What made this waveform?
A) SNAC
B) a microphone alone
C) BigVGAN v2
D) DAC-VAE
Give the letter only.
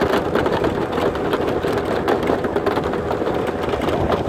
B